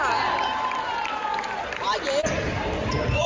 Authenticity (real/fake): real